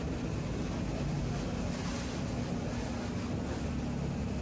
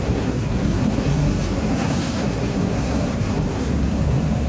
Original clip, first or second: first